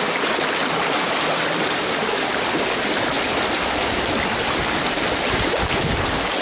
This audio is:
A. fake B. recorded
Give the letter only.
B